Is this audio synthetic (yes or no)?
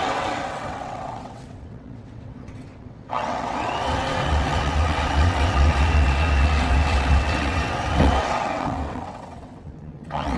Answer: yes